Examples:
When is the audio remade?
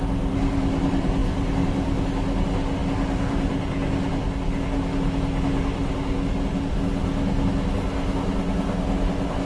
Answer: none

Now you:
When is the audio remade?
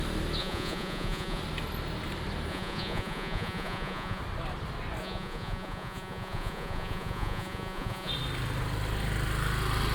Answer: 0.4-1.4 (vocoder, Vocos); 2.5-4.2; 5.0-8.1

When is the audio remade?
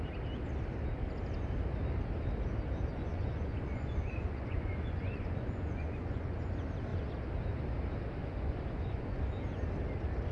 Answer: 3.1-6.5 (vocoder, Vocos); 8.2-9.3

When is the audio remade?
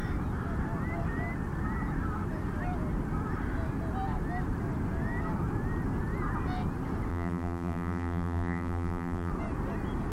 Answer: 7.1-9.3 (vocoder, BigVGAN v2)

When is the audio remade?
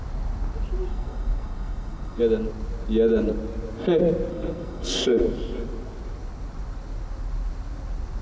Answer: 0.9-2.2 (codec, SNAC); 4.3-5.2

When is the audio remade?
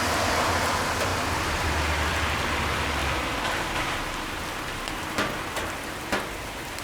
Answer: none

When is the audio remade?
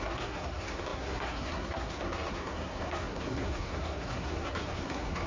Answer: 0.0-5.3 (codec, SNAC)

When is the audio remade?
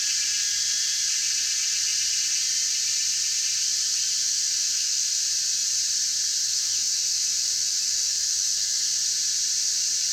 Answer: 4.2-5.1 (autoencoder, DAC-VAE); 6.4-8.9